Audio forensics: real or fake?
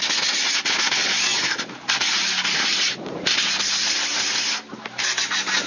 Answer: real